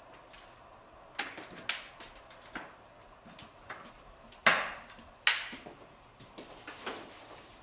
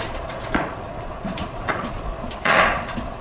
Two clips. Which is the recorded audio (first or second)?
first